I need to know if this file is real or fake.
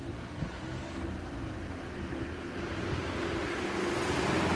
real